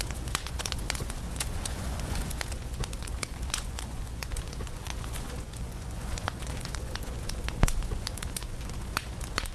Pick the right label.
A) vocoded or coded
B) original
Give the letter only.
A